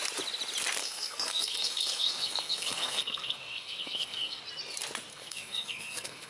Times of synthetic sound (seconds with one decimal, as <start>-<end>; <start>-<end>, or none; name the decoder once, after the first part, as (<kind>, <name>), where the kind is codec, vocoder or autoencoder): 0.8-4.4 (codec, SNAC); 5.1-6.3